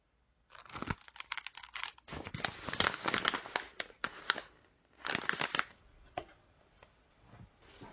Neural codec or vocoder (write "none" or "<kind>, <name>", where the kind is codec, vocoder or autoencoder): none